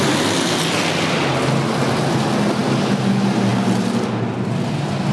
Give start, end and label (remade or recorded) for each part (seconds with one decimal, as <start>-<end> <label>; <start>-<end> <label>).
0.0-5.1 recorded